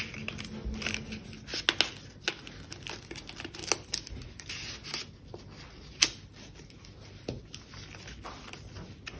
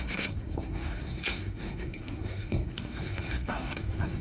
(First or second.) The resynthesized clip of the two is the second